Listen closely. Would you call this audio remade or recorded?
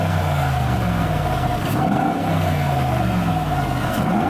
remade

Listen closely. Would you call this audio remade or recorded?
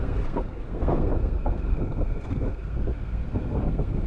remade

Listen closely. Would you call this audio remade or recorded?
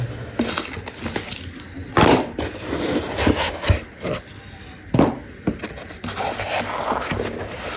recorded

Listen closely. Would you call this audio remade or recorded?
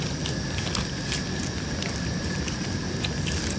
recorded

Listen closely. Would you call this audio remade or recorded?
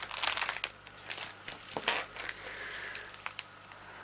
recorded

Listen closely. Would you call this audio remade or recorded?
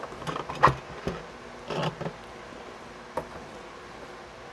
recorded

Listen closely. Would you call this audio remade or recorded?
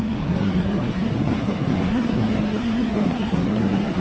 remade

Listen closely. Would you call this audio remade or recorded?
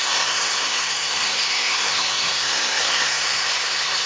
remade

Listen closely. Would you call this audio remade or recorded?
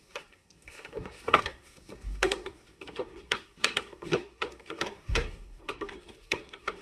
remade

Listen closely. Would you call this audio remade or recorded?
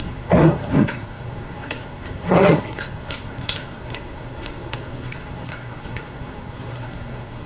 remade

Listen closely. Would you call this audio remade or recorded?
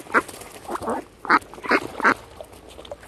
recorded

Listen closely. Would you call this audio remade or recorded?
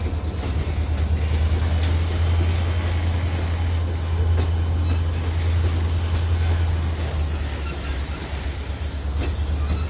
recorded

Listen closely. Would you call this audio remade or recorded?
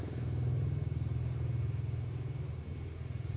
recorded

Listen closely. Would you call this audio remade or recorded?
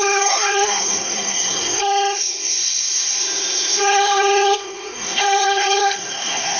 remade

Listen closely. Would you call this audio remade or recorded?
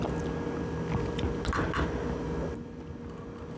recorded